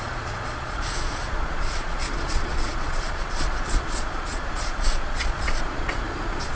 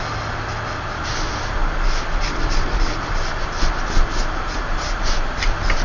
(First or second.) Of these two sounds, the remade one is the first